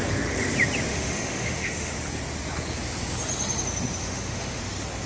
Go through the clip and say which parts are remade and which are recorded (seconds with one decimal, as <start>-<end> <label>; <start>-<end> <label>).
0.0-0.9 recorded; 0.9-1.9 remade; 1.9-4.0 recorded; 4.0-4.6 remade; 4.6-5.1 recorded